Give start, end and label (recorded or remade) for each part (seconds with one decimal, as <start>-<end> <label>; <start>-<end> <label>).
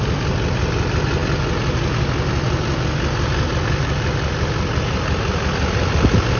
0.0-6.4 recorded